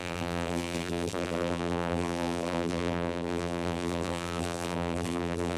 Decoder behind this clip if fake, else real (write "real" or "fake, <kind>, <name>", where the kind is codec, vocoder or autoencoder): fake, vocoder, BigVGAN v2